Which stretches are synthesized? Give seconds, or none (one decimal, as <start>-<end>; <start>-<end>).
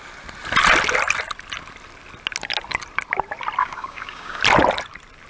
3.6-4.4